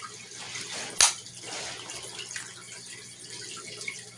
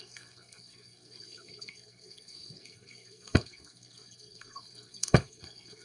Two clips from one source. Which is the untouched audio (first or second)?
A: first